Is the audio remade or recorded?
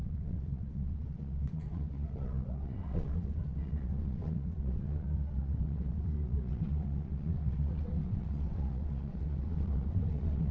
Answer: remade